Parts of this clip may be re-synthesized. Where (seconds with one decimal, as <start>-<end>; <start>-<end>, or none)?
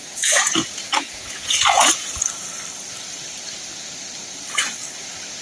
0.0-2.2